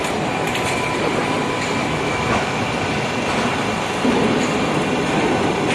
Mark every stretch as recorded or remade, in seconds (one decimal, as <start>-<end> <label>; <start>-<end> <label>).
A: 0.0-1.8 recorded; 1.8-2.7 remade; 2.7-5.7 recorded